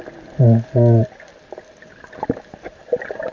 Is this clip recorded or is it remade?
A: recorded